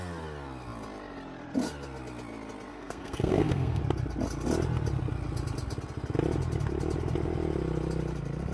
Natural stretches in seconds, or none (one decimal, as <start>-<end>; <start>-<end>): 0.0-2.7; 3.8-8.5